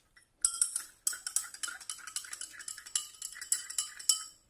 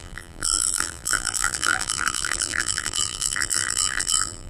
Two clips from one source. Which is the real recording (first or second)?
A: first